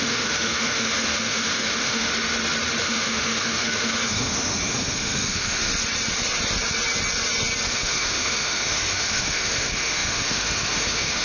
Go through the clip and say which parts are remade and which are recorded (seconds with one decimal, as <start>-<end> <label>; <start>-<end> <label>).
0.0-2.1 remade; 2.1-2.8 recorded; 2.8-5.7 remade; 5.7-7.7 recorded; 7.7-11.2 remade